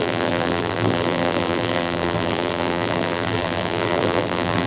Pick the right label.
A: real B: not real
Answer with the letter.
B